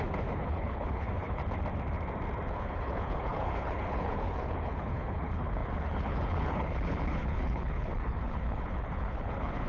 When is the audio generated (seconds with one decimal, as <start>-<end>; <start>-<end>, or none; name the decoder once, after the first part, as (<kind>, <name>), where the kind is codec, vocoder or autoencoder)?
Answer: 0.0-1.4 (codec, HILCodec); 2.5-9.7